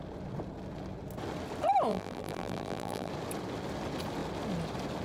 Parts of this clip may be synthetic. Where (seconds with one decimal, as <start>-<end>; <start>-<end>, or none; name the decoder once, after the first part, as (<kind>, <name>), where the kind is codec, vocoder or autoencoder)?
1.9-3.1 (vocoder, BigVGAN v2)

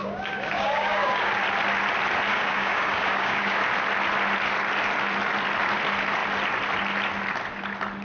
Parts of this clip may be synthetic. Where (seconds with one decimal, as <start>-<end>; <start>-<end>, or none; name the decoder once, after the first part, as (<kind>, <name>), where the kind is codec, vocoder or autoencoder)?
0.0-1.3 (codec, DAC); 2.3-3.6

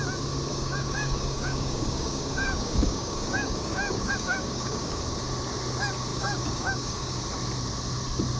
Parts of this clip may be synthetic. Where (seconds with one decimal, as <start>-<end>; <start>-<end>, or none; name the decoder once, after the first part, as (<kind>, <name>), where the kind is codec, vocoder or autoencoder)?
0.5-5.0 (codec, DAC); 6.1-7.2

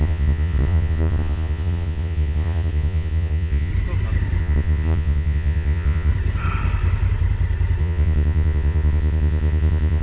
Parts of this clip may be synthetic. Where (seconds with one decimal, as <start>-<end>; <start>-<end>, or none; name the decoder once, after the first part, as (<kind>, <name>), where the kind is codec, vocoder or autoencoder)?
0.0-3.7 (vocoder, Vocos); 4.4-6.1; 7.8-10.0